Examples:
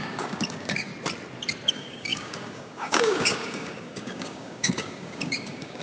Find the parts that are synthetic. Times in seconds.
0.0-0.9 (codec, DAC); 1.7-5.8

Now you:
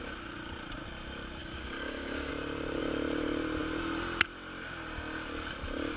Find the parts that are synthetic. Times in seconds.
1.4-2.3 (codec, DAC)

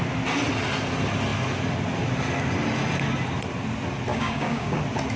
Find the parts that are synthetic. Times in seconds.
4.1-4.8 (codec, DAC)

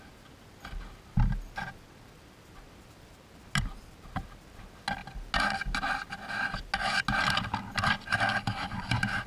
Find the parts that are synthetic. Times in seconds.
8.3-8.9 (codec, DAC)